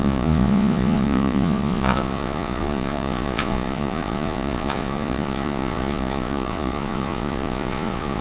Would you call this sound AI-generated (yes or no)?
yes